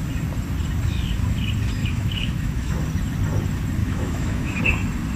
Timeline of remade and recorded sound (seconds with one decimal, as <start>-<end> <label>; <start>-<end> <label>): 0.0-1.8 recorded; 1.8-2.8 remade; 2.8-3.8 recorded; 3.8-4.6 remade; 4.6-5.2 recorded